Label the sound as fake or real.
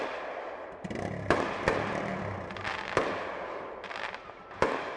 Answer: real